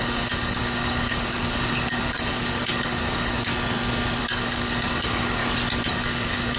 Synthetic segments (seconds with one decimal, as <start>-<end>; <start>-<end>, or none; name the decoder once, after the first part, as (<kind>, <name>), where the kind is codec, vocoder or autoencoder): 0.0-3.5 (codec, DAC); 4.2-5.4; 5.9-6.6